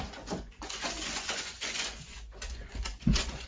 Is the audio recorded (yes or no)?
no